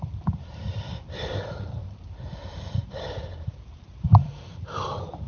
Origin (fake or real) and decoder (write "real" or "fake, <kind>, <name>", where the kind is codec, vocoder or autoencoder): fake, vocoder, BigVGAN v2